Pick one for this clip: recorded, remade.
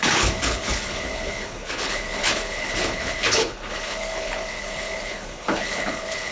remade